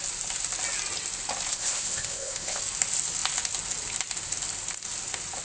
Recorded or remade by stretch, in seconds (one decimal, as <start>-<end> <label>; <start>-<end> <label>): 0.0-1.5 recorded; 1.5-2.6 remade; 2.6-5.4 recorded